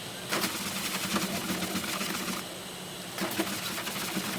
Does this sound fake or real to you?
real